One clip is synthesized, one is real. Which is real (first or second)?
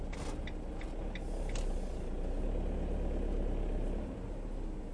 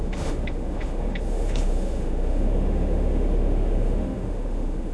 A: first